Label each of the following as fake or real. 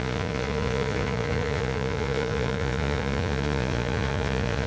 fake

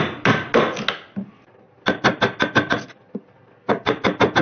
real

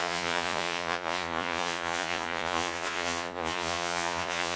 fake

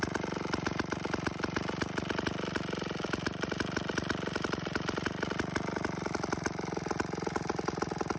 real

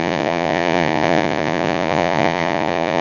fake